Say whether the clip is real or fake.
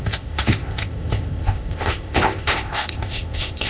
fake